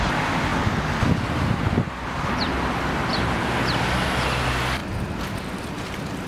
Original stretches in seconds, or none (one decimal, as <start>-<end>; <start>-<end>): 0.0-6.3